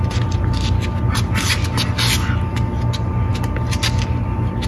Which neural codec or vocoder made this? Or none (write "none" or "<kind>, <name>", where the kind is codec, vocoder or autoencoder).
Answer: none